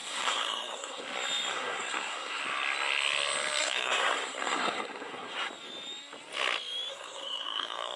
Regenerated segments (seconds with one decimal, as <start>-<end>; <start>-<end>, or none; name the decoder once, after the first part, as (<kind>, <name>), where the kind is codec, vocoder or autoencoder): 0.0-1.0 (codec, SNAC); 1.5-2.4; 3.6-5.5; 6.9-8.0